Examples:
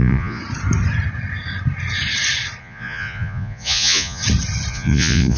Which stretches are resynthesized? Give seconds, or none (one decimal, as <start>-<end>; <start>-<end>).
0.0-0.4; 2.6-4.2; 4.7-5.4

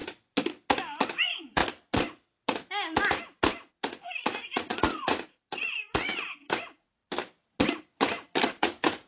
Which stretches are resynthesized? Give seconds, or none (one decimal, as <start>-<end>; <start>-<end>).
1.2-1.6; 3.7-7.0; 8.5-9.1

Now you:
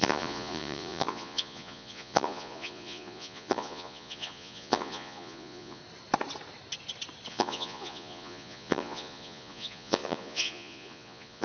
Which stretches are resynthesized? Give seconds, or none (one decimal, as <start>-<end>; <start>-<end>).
0.0-5.8; 7.3-11.4

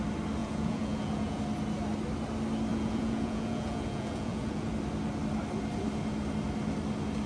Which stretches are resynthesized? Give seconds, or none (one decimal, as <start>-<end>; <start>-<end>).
0.4-1.4; 2.7-4.7